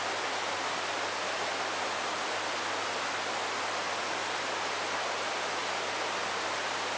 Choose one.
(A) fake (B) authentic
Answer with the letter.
B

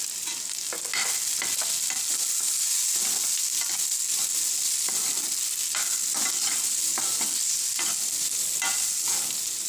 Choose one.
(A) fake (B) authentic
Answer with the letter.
B